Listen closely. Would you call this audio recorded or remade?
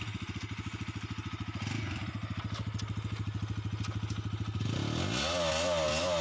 recorded